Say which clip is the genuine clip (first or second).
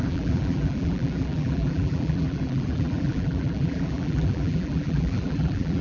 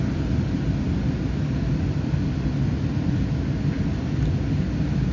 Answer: second